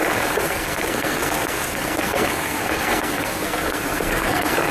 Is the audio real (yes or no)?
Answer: no